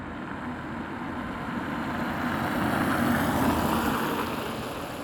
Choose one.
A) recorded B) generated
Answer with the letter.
A